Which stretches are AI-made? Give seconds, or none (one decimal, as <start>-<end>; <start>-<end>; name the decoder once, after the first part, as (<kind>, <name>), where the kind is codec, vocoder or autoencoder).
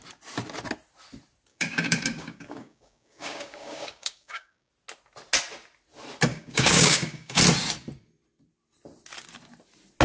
1.5-4.7 (codec, DAC); 6.3-7.4